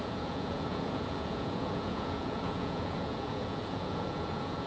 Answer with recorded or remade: remade